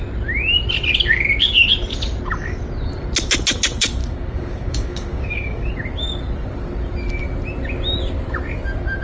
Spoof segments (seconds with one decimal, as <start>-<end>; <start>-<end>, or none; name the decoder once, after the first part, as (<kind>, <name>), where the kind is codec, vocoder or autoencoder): 4.0-5.7 (codec, DAC)